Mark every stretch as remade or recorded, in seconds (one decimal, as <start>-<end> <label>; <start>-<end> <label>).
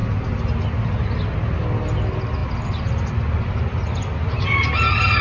0.0-5.2 recorded